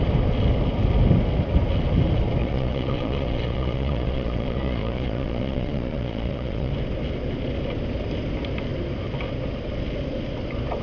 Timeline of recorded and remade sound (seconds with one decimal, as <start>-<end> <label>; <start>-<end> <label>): 0.0-2.4 recorded; 2.4-6.7 remade; 6.7-10.8 recorded